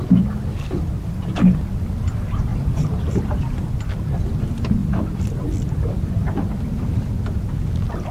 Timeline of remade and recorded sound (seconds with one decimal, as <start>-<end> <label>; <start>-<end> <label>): 0.0-2.5 recorded; 2.5-3.2 remade; 3.2-8.1 recorded